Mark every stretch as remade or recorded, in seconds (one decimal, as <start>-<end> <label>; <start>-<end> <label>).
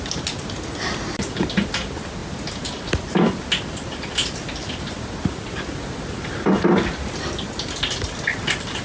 0.0-8.8 recorded